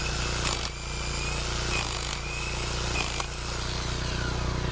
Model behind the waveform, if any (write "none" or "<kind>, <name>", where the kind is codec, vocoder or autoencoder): none